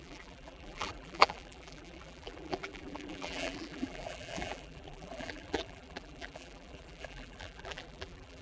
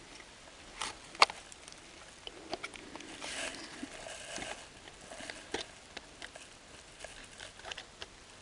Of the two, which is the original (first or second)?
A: second